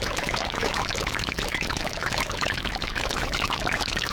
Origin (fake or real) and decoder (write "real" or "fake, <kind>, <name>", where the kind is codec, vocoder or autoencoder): fake, autoencoder, DAC-VAE